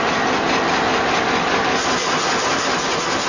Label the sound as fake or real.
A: real